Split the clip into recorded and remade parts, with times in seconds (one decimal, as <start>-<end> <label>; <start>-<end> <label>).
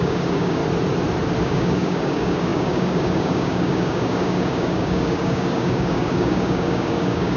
0.0-0.6 remade; 0.6-1.4 recorded; 1.4-7.4 remade